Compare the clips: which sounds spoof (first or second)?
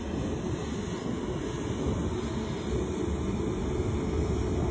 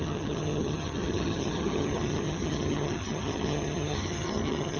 second